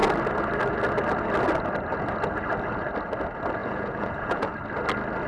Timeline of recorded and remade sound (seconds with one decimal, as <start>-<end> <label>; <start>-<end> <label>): 0.0-3.6 recorded; 3.6-4.5 remade; 4.5-5.3 recorded